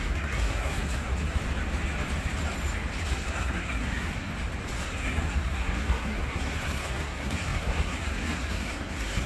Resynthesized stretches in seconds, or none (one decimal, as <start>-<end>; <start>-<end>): 0.0-1.4; 3.0-4.3; 4.8-9.3